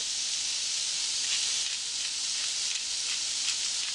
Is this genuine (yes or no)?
yes